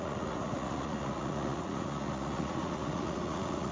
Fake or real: fake